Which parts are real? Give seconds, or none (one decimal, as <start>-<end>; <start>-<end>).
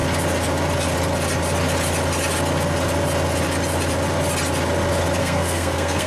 0.0-5.2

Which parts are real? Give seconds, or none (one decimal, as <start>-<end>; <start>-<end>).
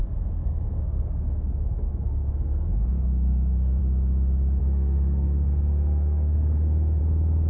3.8-4.6; 7.0-7.5